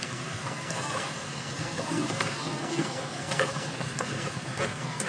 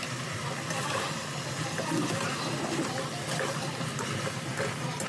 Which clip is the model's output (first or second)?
first